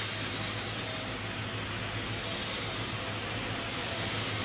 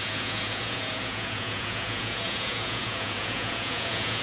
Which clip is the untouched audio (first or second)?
first